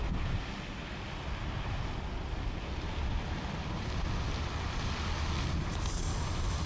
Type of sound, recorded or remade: recorded